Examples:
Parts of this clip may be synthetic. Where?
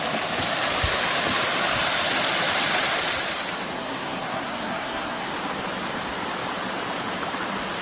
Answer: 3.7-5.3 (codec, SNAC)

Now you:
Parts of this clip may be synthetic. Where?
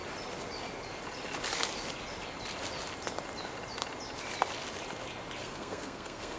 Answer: 5.4-6.4 (codec, SNAC)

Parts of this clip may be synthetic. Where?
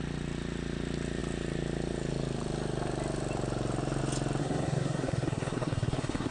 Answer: 4.4-6.3 (codec, SNAC)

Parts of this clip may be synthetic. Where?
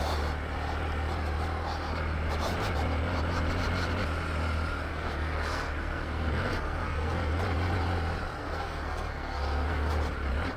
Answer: 4.9-7.4 (codec, SNAC); 8.4-9.9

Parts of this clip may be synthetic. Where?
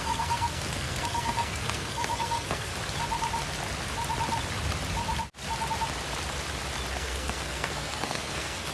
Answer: 0.0-2.7 (codec, SNAC); 6.9-8.7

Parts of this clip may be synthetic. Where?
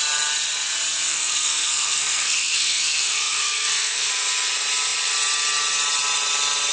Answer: 1.1-4.1 (codec, SNAC)